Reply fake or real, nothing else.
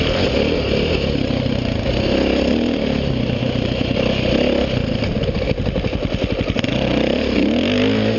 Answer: real